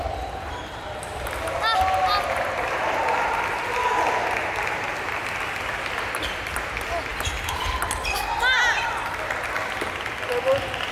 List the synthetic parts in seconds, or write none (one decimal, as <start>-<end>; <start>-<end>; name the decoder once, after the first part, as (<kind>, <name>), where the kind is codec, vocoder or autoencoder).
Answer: none